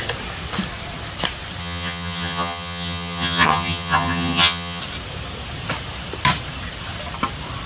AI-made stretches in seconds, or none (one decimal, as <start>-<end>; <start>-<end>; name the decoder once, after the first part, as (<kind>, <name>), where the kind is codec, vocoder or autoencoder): 1.6-4.8 (vocoder, HiFi-GAN)

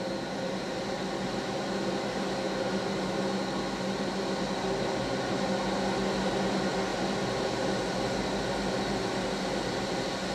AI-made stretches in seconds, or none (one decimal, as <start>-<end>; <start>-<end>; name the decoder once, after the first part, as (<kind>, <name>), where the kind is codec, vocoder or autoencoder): none

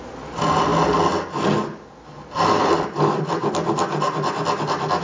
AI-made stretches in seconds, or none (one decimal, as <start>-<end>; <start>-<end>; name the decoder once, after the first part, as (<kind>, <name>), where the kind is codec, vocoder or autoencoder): none

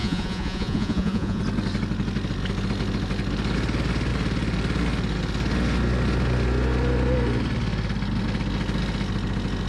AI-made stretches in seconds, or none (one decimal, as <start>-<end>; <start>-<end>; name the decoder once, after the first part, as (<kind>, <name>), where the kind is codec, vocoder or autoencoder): 0.0-1.4 (vocoder, Vocos)

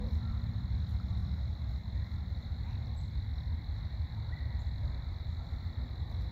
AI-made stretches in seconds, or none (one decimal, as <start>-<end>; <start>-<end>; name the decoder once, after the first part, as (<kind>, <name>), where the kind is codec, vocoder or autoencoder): 0.0-1.2 (vocoder, BigVGAN v2); 2.4-6.3

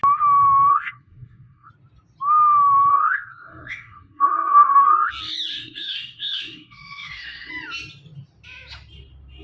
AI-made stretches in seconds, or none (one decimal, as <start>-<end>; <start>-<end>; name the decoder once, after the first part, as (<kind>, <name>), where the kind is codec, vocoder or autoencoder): 0.7-1.7 (codec, SNAC); 2.9-5.1; 5.5-7.5

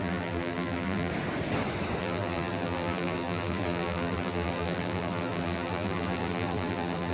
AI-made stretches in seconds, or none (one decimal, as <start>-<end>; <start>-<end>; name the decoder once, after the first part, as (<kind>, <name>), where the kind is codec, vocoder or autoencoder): 0.0-1.1 (vocoder, BigVGAN v2); 2.0-7.1